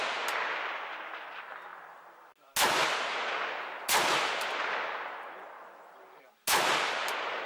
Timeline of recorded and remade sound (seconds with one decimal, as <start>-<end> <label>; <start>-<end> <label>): 0.0-7.5 recorded